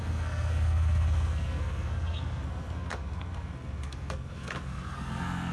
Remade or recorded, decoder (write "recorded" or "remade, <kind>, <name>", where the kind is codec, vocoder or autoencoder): remade, codec, SNAC